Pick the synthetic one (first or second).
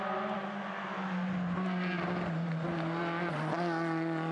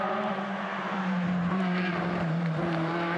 second